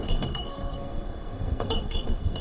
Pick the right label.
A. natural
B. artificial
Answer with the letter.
B